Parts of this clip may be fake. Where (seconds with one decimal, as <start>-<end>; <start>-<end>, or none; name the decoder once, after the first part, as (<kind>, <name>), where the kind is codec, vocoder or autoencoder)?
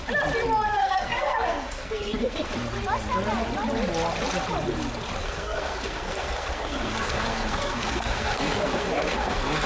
0.7-2.5 (codec, SNAC); 5.2-9.7